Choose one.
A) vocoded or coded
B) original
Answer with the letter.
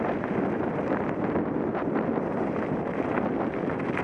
B